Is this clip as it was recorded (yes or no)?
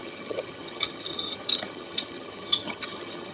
no